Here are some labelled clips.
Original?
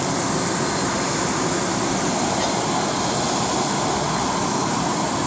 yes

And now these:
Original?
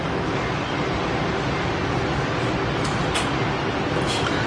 yes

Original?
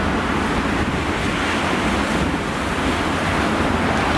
yes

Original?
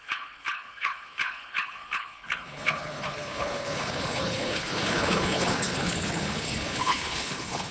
no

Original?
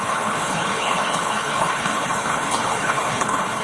no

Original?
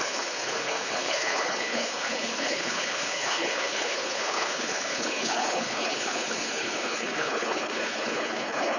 no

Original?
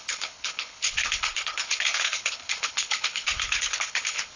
no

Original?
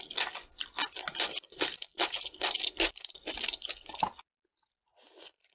yes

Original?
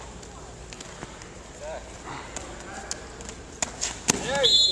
yes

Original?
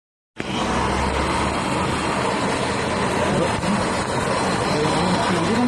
yes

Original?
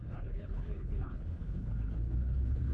no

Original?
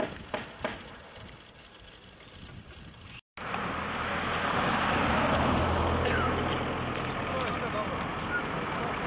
yes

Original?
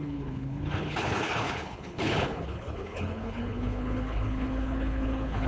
no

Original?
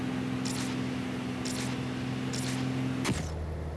yes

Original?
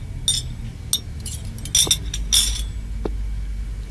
yes